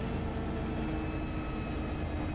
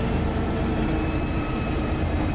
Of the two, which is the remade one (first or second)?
second